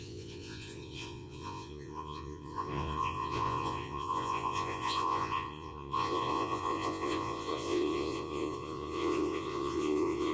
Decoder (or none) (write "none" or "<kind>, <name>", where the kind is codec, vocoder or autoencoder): vocoder, Vocos